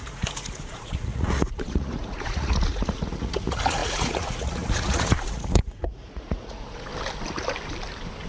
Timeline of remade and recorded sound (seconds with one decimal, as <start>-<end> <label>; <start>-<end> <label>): 0.0-6.9 remade; 6.9-8.3 recorded